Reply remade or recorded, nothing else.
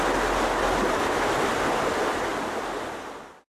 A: recorded